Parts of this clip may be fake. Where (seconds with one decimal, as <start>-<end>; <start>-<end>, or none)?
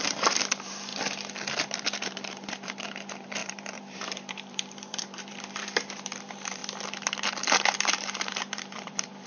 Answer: 0.0-0.9; 1.5-6.6; 7.3-9.3